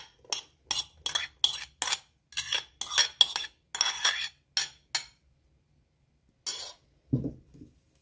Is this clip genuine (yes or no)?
yes